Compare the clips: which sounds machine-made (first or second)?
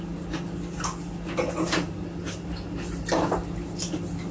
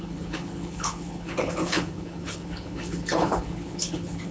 second